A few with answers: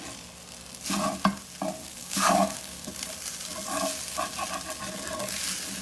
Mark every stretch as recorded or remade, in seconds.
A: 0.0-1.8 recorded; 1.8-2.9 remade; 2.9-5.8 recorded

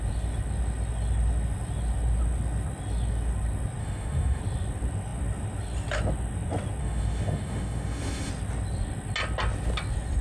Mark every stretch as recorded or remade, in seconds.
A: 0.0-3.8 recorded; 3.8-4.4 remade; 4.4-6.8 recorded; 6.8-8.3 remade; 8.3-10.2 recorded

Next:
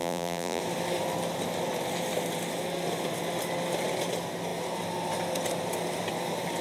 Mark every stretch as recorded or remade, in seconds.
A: 0.0-0.6 remade; 0.6-6.6 recorded